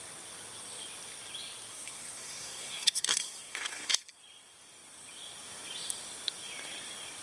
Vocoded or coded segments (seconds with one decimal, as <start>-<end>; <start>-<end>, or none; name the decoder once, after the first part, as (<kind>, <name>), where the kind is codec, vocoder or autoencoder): 1.7-3.9 (codec, SNAC)